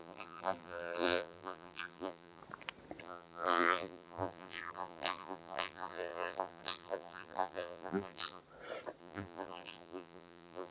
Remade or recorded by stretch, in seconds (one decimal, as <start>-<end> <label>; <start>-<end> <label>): 0.0-2.4 remade; 2.4-3.0 recorded; 3.0-8.4 remade; 8.4-9.0 recorded; 9.0-10.7 remade